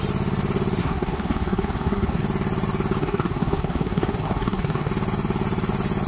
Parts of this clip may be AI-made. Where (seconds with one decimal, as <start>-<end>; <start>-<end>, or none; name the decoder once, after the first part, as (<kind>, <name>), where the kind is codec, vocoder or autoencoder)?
0.8-2.2 (codec, SNAC); 3.0-4.9